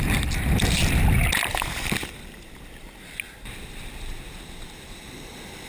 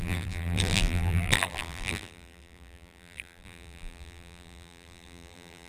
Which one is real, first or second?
first